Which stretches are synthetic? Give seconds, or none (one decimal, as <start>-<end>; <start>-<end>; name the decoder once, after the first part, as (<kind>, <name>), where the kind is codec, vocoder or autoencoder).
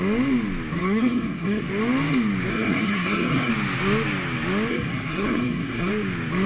0.8-1.7 (codec, SNAC); 2.5-3.5; 4.7-5.9